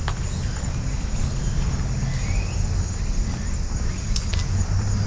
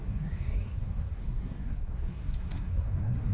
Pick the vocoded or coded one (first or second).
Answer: second